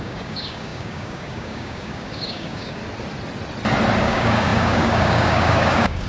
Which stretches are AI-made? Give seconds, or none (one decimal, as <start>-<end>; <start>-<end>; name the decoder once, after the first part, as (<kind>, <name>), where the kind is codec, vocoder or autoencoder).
0.0-2.8 (codec, DAC); 4.0-6.1